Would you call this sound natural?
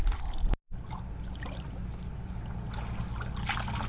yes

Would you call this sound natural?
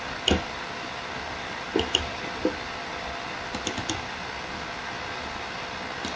yes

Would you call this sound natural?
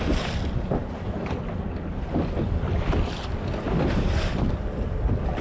yes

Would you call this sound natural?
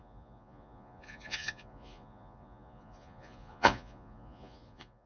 no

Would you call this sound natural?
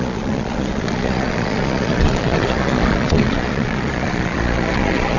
no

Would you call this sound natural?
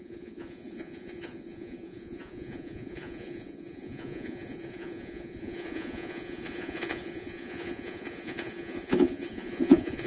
no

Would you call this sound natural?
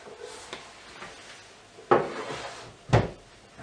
yes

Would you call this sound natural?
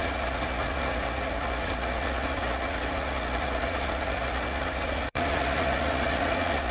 no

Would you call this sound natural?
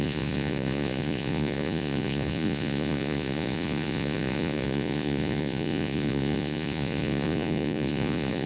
no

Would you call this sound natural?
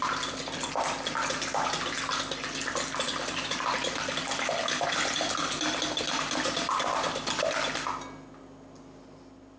yes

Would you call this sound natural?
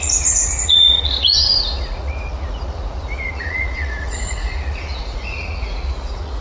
no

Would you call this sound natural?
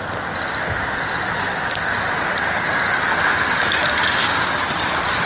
yes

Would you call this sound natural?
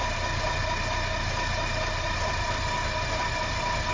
yes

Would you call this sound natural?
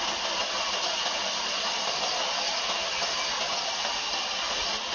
yes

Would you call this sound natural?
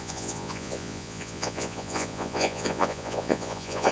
no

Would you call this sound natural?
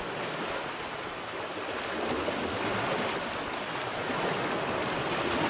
yes